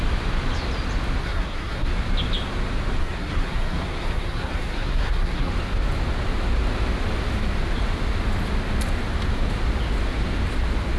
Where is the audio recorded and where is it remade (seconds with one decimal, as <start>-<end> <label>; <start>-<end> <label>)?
0.0-1.2 recorded; 1.2-1.9 remade; 1.9-3.0 recorded; 3.0-5.5 remade; 5.5-11.0 recorded